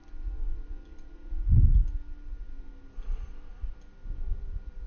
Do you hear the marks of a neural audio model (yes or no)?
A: no